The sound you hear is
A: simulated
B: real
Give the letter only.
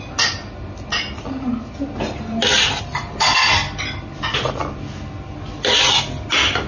B